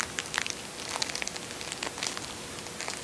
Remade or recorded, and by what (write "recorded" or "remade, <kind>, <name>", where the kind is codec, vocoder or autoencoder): recorded